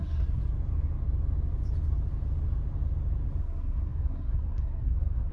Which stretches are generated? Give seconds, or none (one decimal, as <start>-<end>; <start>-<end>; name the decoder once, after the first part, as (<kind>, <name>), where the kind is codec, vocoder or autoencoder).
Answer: 0.0-0.4 (codec, SNAC); 3.4-5.3

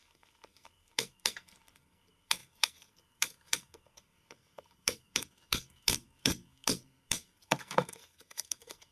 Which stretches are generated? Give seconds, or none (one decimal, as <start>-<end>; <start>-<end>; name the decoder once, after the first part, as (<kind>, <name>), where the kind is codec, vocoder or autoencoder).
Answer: 0.0-8.9 (codec, SNAC)

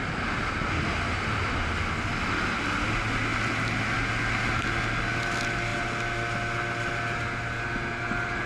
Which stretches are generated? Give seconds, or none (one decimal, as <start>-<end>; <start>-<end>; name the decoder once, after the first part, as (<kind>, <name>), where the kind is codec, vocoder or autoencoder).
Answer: none

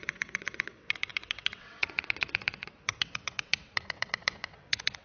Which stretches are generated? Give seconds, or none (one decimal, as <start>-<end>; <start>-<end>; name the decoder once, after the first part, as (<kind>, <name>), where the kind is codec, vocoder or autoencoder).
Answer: 0.0-5.0 (vocoder, WaveNeXt)

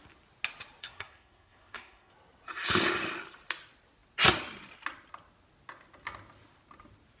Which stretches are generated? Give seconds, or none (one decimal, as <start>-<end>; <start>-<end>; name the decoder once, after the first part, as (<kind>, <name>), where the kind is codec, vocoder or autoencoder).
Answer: 0.8-2.1 (codec, SNAC)

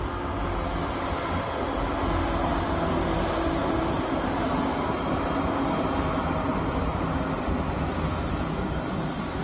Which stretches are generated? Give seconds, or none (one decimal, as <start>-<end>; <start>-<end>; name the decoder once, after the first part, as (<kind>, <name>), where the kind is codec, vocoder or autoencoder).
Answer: none

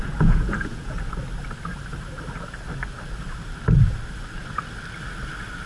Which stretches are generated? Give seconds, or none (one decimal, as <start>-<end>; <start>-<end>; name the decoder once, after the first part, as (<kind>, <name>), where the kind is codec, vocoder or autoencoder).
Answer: 0.0-1.0 (vocoder, Vocos)